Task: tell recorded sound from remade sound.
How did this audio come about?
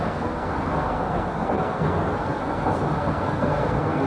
remade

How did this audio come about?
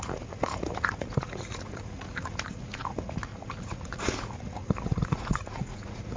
remade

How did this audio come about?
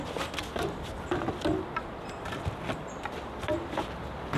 recorded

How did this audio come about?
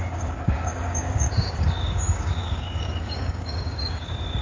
remade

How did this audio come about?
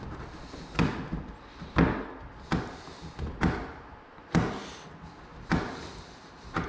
recorded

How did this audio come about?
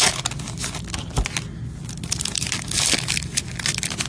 recorded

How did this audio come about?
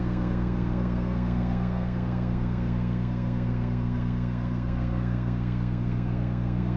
remade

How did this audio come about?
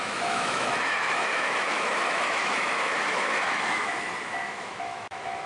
remade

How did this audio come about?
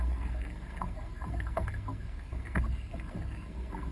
remade